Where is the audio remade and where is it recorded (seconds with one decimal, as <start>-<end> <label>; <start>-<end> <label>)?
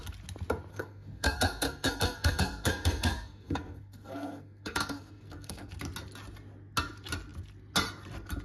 0.0-0.7 recorded; 0.7-5.7 remade; 5.7-8.4 recorded